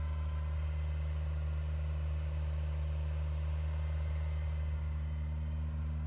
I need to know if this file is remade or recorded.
recorded